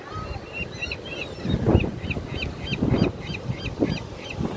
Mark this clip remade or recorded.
recorded